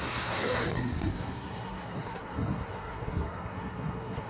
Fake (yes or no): yes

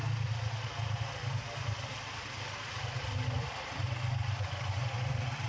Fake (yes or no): no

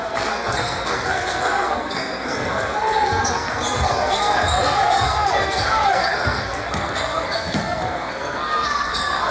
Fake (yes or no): yes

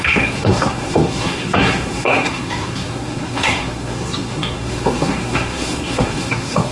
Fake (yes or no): yes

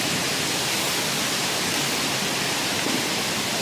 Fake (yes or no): no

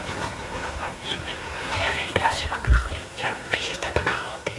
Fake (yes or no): yes